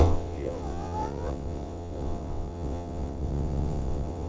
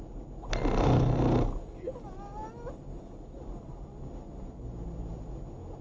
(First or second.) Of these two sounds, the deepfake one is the first